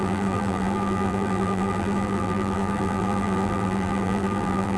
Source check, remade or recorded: remade